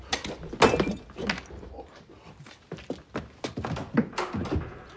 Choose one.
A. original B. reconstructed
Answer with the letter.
A